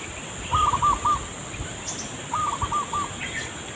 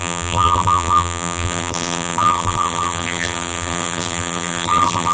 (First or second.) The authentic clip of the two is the first